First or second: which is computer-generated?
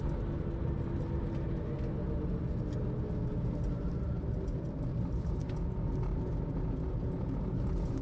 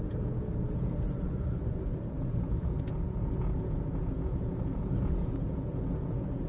second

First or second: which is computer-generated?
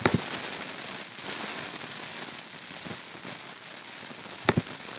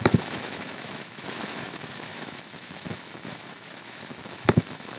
second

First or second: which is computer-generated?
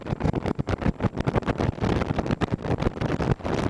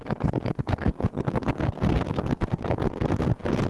second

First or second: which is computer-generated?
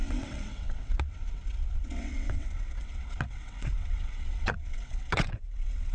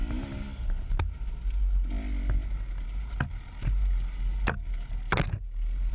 first